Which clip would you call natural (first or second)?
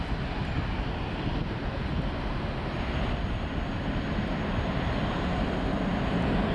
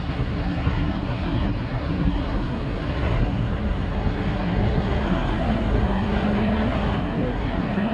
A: first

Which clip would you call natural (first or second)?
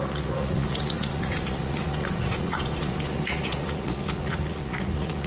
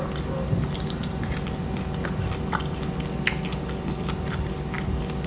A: second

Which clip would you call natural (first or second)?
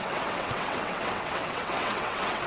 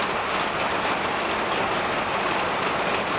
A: second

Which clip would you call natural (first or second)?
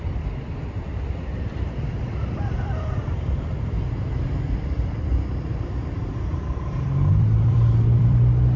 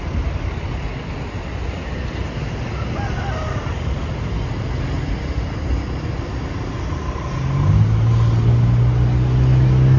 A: second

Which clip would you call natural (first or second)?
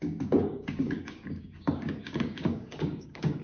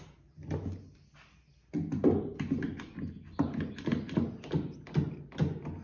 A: second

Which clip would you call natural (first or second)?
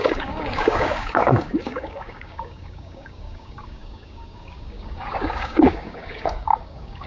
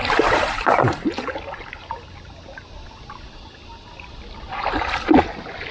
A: second